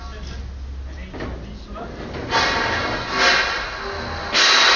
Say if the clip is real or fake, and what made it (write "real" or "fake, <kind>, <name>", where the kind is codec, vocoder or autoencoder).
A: real